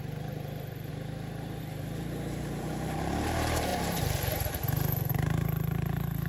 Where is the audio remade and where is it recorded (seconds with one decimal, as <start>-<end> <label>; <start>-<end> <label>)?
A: 0.0-0.9 remade; 0.9-1.6 recorded; 1.6-6.3 remade